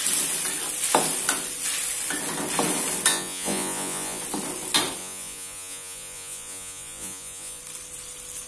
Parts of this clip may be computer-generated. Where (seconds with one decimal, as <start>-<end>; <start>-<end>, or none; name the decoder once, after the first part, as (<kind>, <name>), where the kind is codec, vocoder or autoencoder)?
3.1-4.2 (vocoder, Vocos); 5.0-7.6